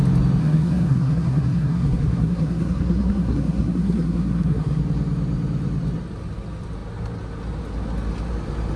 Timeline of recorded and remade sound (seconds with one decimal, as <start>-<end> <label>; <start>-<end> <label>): 0.0-0.4 recorded; 0.4-4.8 remade; 4.8-8.8 recorded